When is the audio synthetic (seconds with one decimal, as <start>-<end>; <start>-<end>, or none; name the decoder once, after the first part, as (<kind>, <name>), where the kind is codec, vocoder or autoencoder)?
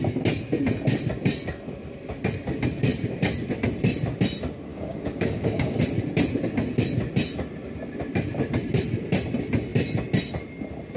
4.7-5.8 (codec, DAC)